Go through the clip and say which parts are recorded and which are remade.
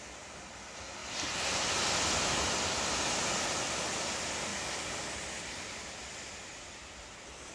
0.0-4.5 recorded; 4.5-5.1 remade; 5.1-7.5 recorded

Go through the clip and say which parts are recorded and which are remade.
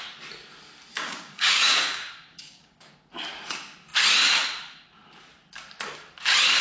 0.0-0.9 recorded; 0.9-2.9 remade; 2.9-6.6 recorded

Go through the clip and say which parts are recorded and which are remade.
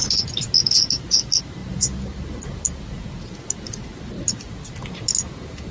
0.0-5.7 recorded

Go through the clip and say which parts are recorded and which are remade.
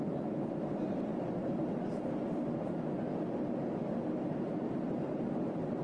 0.0-5.8 recorded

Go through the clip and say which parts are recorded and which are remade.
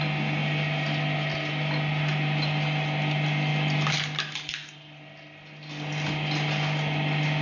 0.0-7.4 recorded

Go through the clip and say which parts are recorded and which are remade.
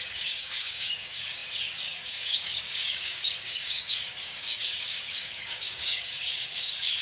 0.0-7.0 remade